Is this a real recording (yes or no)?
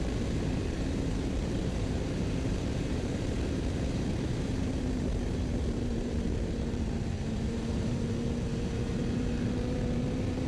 no